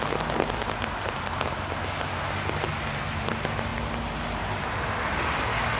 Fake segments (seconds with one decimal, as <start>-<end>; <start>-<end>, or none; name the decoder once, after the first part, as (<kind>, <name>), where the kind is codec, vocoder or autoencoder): 2.7-3.3 (vocoder, BigVGAN v2)